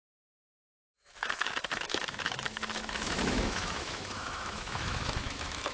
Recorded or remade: remade